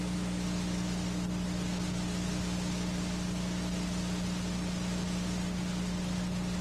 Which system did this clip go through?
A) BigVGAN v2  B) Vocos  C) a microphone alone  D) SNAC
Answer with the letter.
C